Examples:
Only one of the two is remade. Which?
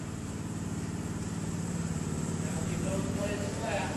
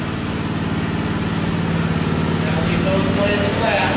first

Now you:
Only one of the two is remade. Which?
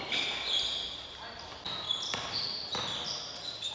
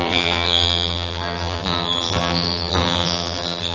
second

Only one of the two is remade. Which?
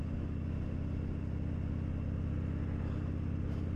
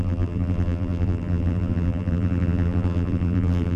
second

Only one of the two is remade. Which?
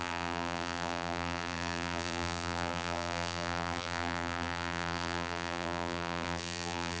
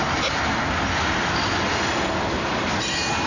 first